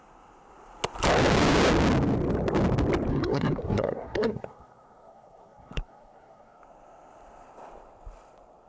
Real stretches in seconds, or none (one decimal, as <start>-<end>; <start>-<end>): 0.0-3.1; 6.6-8.7